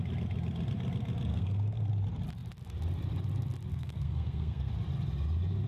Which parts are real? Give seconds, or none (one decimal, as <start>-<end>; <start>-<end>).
0.0-1.3; 1.9-3.7; 4.7-5.7